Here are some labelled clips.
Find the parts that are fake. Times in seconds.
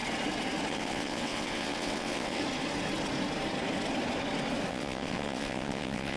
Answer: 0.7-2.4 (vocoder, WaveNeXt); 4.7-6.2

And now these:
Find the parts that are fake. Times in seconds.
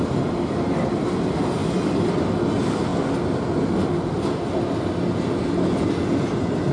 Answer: 1.6-2.1 (vocoder, BigVGAN v2)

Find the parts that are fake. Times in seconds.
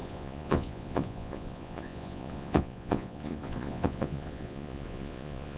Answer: 0.0-5.6 (vocoder, Vocos)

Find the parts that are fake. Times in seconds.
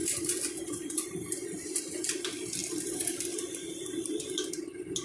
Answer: 0.0-1.8 (vocoder, BigVGAN v2); 2.6-3.4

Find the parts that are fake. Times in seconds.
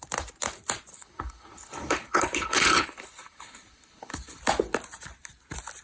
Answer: 0.9-4.4 (codec, HILCodec)